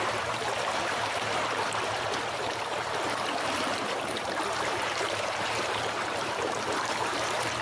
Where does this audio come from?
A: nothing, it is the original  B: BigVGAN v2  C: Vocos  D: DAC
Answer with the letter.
B